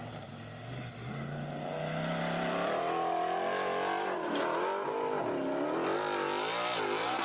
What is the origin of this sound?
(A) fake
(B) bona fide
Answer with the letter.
B